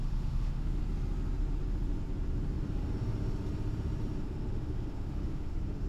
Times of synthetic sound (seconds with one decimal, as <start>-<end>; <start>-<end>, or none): 0.0-0.8; 4.2-5.9